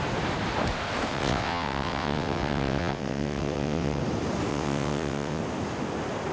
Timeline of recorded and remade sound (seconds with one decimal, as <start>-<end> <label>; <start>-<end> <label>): 0.0-1.1 recorded; 1.1-4.0 remade; 4.0-4.5 recorded; 4.5-5.4 remade; 5.4-6.3 recorded